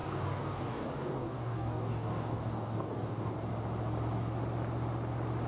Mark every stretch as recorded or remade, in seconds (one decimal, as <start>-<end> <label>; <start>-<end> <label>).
0.0-3.3 remade; 3.3-5.5 recorded